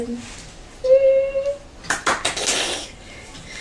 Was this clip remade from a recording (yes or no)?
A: no